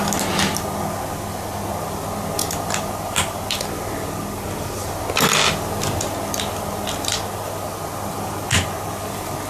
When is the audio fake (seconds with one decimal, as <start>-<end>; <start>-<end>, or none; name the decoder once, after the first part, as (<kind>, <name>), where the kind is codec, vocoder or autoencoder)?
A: none